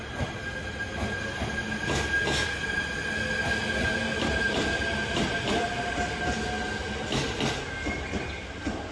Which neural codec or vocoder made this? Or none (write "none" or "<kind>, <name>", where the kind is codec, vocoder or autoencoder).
none